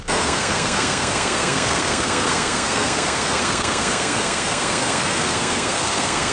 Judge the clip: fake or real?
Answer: fake